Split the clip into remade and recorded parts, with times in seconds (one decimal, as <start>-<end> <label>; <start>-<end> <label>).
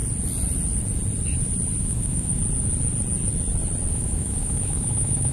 0.0-1.8 recorded; 1.8-2.4 remade; 2.4-3.9 recorded; 3.9-5.3 remade